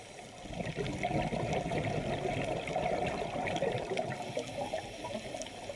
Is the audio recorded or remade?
recorded